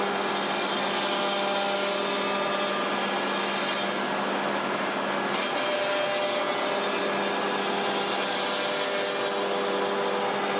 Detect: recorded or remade recorded